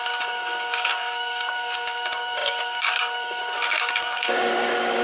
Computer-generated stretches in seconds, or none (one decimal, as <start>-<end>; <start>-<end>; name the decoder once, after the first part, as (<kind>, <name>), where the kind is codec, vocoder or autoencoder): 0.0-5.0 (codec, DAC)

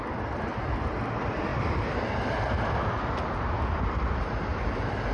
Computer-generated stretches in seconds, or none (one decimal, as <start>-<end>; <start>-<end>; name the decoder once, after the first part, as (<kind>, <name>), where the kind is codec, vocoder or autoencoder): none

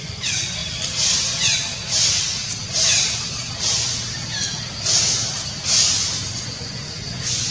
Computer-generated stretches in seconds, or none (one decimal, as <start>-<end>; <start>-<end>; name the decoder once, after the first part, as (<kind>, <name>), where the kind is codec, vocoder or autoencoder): 0.0-0.6 (vocoder, Vocos); 1.2-1.7; 6.2-7.5

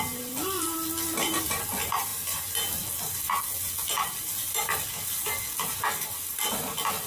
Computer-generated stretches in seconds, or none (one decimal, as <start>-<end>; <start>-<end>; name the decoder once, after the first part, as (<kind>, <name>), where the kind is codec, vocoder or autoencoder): none

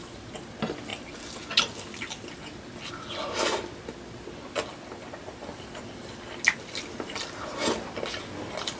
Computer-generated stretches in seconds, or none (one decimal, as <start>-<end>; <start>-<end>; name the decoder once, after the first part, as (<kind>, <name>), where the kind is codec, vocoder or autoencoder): none